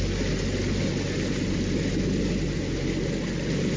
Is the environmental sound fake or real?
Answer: real